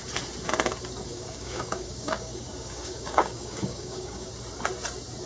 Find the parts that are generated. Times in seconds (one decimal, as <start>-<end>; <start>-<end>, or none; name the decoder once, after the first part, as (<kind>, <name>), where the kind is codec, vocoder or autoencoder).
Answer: 1.1-4.3 (codec, DAC)